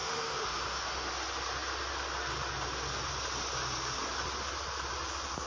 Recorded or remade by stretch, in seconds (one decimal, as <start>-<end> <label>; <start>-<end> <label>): 0.0-1.1 remade; 1.1-5.5 recorded

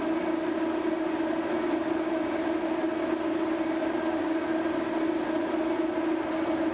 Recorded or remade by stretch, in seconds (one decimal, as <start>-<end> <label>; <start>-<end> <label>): 0.0-6.7 recorded

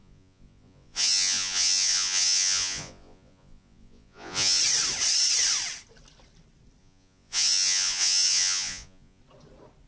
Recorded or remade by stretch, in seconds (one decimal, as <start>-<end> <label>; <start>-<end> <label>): 0.0-4.6 remade; 4.6-6.8 recorded; 6.8-9.2 remade; 9.2-9.9 recorded

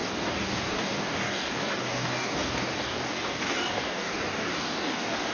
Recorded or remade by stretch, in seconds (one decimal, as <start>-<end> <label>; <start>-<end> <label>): 0.0-5.3 remade

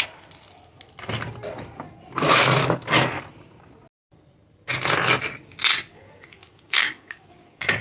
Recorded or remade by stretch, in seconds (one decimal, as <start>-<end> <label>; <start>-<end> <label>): 0.0-2.6 recorded; 2.6-3.2 remade; 3.2-5.9 recorded; 5.9-7.8 remade

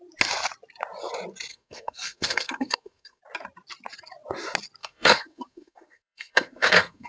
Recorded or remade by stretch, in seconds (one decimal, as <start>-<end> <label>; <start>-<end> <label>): 0.0-1.5 recorded; 1.5-3.2 remade; 3.2-4.8 recorded; 4.8-7.1 remade

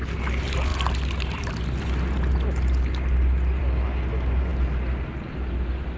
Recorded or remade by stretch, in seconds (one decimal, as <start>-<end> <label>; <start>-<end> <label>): 0.0-6.0 recorded